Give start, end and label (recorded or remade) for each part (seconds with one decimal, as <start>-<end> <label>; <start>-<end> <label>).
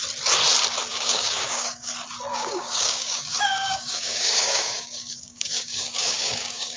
0.0-0.9 recorded; 0.9-1.9 remade; 1.9-2.3 recorded; 2.3-6.8 remade